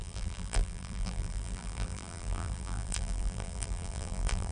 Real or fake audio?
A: fake